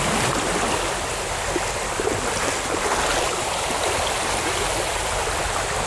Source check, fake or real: real